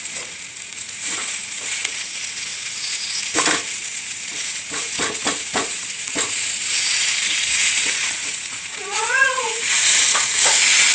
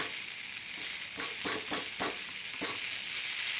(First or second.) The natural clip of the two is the second